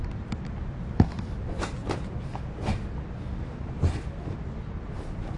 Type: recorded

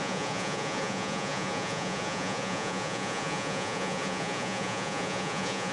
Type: remade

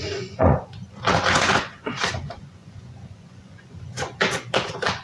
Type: remade